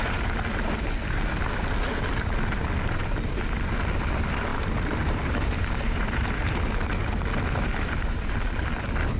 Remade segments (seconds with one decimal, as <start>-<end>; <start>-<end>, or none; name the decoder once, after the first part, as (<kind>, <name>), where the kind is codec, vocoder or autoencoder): 4.5-6.6 (vocoder, BigVGAN v2)